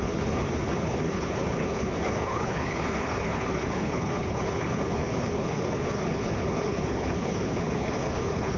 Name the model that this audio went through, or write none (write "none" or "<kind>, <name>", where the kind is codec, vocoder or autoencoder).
codec, HILCodec